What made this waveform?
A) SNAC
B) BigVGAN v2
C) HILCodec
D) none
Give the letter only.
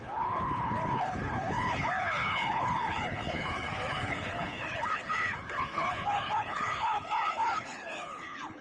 C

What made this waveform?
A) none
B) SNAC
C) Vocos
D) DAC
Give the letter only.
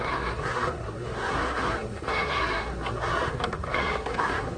B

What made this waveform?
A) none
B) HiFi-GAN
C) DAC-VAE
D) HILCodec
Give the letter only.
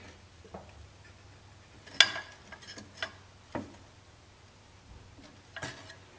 A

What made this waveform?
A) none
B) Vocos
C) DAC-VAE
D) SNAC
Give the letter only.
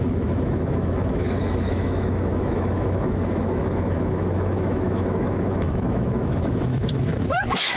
C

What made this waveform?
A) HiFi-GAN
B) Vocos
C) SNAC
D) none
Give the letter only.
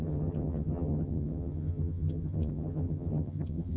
A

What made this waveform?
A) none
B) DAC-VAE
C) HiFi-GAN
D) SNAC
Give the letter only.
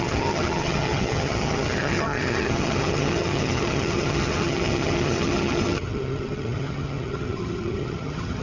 C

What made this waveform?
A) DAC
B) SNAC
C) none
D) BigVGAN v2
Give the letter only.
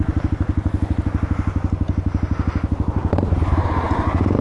C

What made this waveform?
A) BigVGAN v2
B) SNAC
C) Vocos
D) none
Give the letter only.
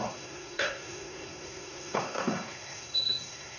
B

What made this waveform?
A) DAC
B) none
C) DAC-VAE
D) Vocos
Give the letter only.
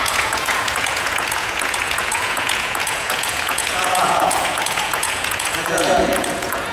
D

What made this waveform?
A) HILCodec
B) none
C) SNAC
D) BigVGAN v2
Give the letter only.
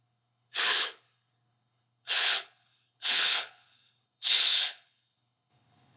A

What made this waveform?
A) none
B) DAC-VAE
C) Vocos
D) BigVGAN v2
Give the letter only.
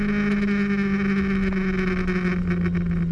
A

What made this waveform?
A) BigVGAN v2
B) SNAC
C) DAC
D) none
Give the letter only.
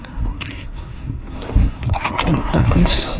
B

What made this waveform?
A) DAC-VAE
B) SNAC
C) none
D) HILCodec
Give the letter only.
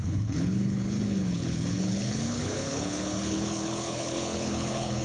D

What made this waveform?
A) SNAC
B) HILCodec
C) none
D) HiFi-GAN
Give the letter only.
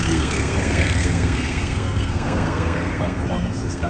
A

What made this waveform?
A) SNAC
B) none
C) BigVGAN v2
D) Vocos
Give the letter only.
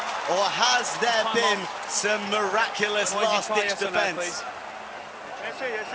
B